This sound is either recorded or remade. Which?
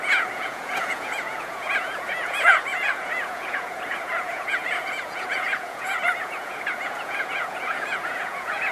remade